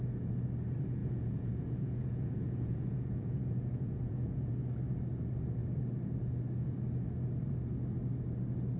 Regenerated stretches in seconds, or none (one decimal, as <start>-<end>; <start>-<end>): 1.0-4.5